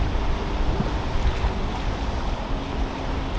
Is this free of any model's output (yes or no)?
yes